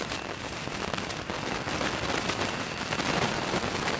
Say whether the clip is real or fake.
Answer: real